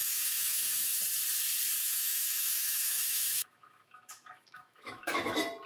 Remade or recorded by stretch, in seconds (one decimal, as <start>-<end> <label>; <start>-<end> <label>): 0.0-1.0 remade; 1.0-1.8 recorded; 1.8-5.2 remade; 5.2-5.7 recorded